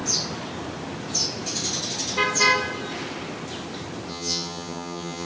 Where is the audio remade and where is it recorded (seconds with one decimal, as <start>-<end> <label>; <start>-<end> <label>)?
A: 0.0-4.1 recorded; 4.1-5.3 remade